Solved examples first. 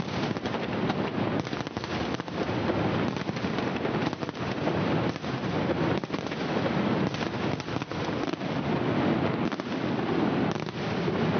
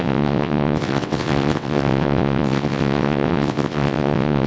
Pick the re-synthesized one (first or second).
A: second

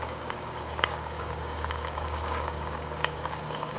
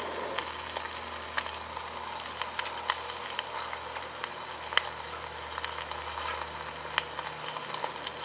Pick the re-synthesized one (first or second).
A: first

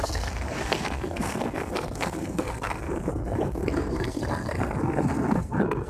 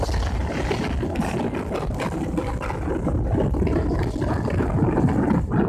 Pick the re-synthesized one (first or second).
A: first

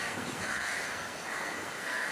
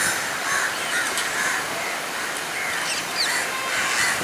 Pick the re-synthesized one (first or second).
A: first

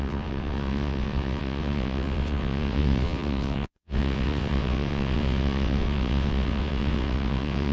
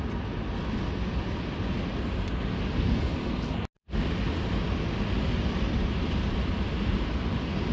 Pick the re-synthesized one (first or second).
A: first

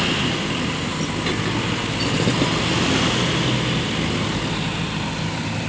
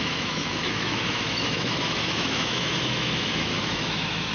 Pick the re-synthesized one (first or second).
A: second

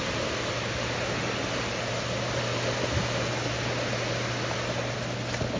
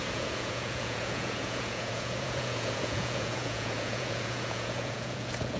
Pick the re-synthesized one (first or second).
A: second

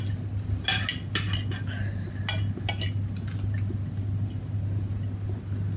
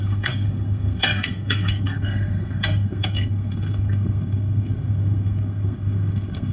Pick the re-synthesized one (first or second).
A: second